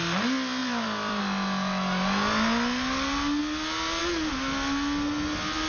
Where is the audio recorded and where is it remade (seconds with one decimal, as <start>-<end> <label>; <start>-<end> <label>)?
0.0-0.6 recorded; 0.6-1.2 remade; 1.2-5.7 recorded